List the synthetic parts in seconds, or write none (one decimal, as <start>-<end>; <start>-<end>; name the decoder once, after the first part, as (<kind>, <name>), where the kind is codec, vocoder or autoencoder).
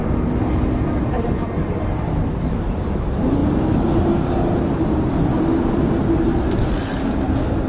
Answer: none